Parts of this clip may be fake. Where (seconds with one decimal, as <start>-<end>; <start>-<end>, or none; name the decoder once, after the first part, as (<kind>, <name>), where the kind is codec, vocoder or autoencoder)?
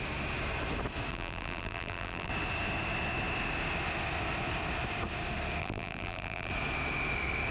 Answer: 1.1-2.3 (vocoder, BigVGAN v2); 5.6-6.5